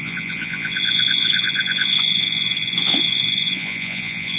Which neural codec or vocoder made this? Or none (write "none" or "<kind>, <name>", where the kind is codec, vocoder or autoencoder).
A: vocoder, Vocos